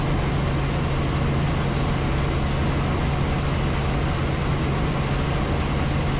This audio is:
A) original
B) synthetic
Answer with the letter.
A